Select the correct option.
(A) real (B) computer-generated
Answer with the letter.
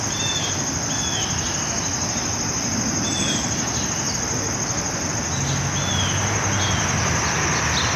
A